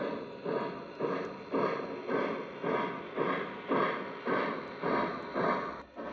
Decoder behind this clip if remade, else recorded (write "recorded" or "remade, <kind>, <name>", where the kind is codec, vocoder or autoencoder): recorded